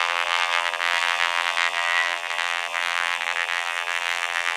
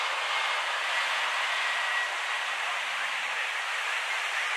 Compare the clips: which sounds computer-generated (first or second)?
first